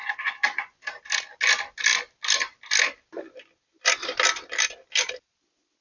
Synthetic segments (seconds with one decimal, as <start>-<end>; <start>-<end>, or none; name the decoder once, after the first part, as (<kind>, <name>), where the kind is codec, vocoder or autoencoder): 0.0-0.8 (vocoder, Vocos)